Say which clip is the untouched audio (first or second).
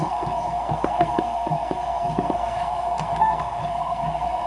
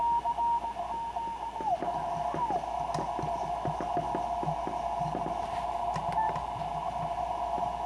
second